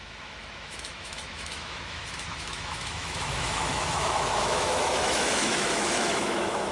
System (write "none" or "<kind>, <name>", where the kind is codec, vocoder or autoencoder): autoencoder, DAC-VAE